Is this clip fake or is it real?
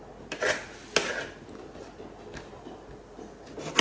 real